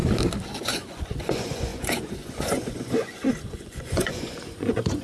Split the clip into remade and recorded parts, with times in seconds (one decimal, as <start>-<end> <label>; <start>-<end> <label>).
0.0-0.6 recorded; 0.6-5.0 remade